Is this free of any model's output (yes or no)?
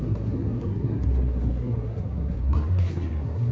no